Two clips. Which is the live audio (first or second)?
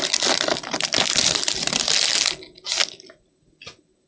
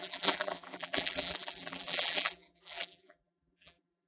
first